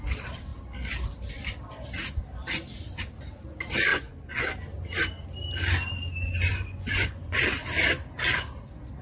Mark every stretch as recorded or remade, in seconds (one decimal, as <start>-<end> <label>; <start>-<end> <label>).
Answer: 0.0-3.9 recorded; 3.9-4.5 remade; 4.5-6.5 recorded; 6.5-7.4 remade; 7.4-9.0 recorded